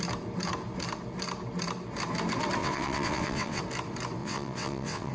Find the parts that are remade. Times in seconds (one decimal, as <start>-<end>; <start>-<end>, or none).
2.6-3.6; 4.2-5.1